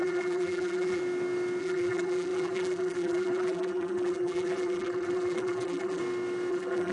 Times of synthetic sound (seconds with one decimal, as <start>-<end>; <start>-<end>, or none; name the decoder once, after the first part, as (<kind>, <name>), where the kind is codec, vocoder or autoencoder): 0.0-1.0 (vocoder, BigVGAN v2); 1.6-6.0; 6.5-6.9